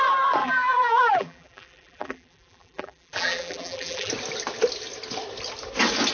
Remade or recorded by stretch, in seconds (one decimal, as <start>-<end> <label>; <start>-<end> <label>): 0.0-0.4 recorded; 0.4-4.1 remade; 4.1-6.1 recorded